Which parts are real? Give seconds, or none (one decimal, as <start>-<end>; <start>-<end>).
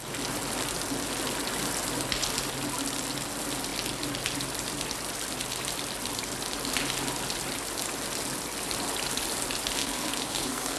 0.0-9.8